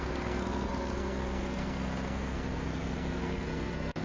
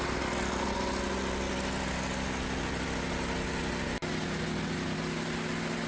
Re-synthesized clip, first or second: first